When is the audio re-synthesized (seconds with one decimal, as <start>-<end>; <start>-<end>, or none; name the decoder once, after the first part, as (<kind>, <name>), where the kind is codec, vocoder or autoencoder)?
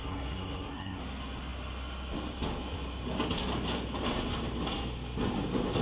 0.0-1.0 (codec, SNAC)